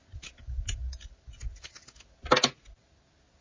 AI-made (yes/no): no